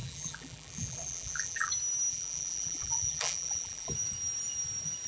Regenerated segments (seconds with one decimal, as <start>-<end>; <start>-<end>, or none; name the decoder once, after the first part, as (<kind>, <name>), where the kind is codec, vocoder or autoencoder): 0.0-1.7 (vocoder, BigVGAN v2); 2.1-3.9